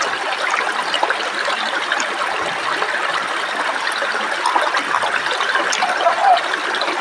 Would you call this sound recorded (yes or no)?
yes